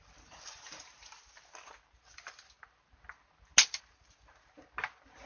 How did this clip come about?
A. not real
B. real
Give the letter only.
B